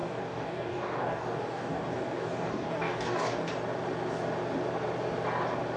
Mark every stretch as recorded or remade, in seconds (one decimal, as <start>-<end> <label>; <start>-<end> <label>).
0.0-3.5 remade; 3.5-5.8 recorded